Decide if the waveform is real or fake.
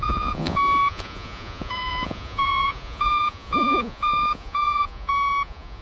fake